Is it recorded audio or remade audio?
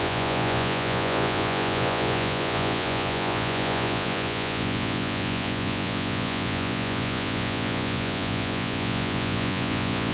remade